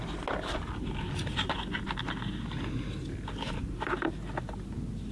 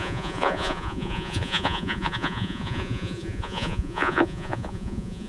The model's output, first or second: second